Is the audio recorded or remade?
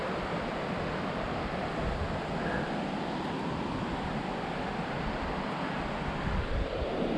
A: recorded